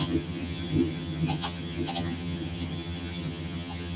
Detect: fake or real fake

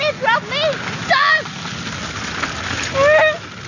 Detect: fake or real real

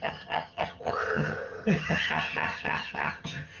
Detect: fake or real fake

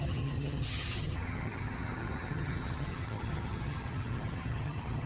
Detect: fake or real fake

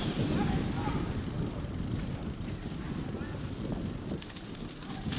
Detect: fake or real real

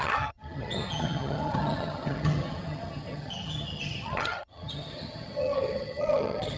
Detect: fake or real fake